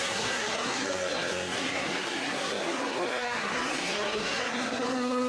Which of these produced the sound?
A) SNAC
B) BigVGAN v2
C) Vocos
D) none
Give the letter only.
A